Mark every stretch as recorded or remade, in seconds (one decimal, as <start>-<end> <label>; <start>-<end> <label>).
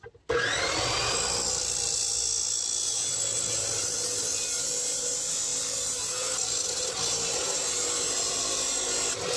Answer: 0.0-9.4 recorded